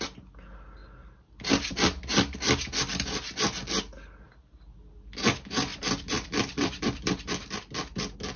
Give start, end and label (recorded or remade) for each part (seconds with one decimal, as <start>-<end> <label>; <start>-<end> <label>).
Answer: 0.0-5.7 recorded; 5.7-8.0 remade; 8.0-8.4 recorded

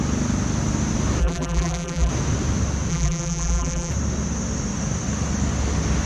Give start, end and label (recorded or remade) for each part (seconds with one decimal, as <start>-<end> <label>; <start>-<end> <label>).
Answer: 0.0-1.2 recorded; 1.2-2.1 remade; 2.1-2.9 recorded; 2.9-3.9 remade; 3.9-6.1 recorded